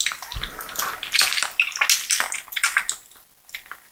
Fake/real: real